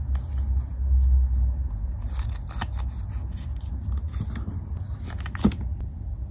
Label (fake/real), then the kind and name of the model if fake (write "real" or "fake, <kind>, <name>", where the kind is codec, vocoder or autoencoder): real